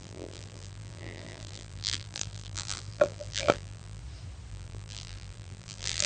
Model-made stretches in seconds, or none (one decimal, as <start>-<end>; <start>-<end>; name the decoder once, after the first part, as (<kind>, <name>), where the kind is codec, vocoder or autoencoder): 0.0-4.0 (vocoder, BigVGAN v2); 4.5-6.1